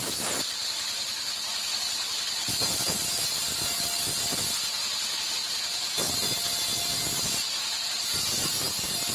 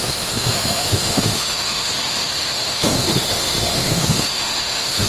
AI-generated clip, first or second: second